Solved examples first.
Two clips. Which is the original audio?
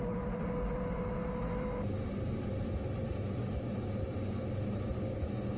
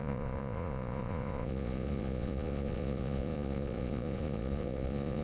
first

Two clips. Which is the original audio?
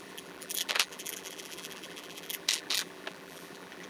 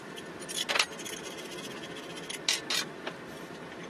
second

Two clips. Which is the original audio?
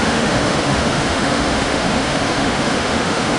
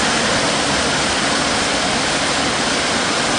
second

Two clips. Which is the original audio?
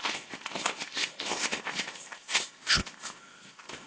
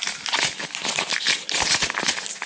second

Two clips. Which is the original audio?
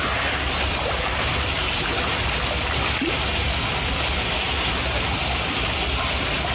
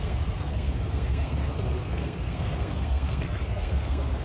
first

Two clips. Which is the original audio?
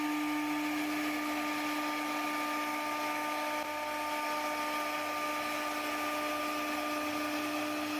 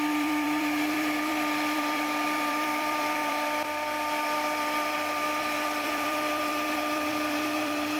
first